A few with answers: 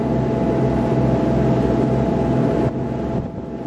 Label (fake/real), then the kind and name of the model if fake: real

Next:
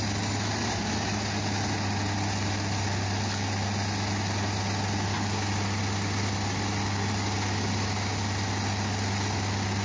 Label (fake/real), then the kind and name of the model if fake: real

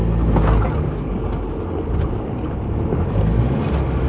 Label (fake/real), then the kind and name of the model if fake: real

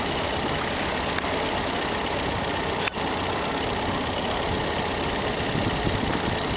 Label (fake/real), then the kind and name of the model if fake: real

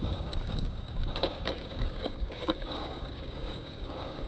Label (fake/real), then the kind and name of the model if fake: fake, codec, DAC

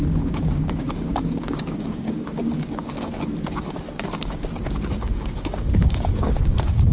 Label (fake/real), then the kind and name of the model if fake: fake, codec, DAC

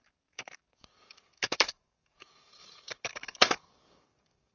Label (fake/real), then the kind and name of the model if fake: fake, codec, DAC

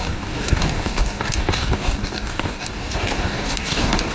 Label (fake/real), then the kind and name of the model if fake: fake, codec, DAC